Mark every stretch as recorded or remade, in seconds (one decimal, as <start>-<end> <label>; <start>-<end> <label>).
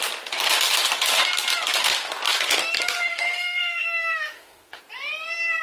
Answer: 0.0-3.1 recorded; 3.1-4.8 remade; 4.8-5.6 recorded